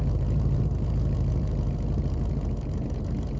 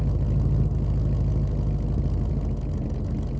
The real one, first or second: second